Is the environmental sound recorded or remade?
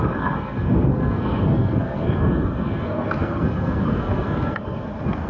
remade